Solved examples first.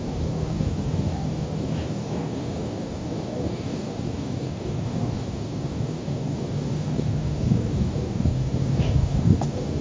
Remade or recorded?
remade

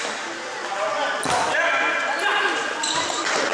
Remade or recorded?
recorded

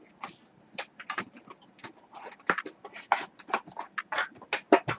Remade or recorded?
recorded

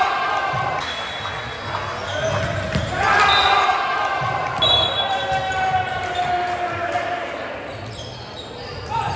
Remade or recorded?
recorded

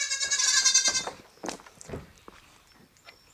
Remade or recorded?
remade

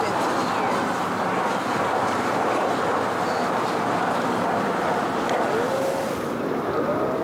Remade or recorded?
recorded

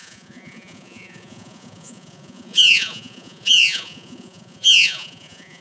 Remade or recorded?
remade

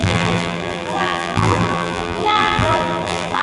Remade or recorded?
remade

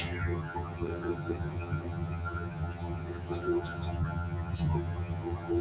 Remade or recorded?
remade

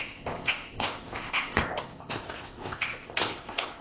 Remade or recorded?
remade